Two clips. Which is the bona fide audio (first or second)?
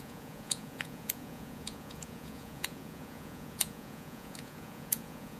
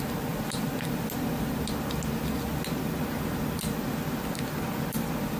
second